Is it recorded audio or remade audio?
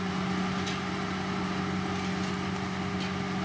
recorded